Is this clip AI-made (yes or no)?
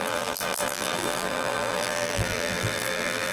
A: yes